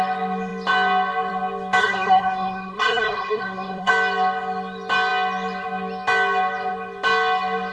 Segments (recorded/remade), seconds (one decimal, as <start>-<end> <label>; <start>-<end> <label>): 0.0-1.8 recorded; 1.8-3.9 remade; 3.9-7.7 recorded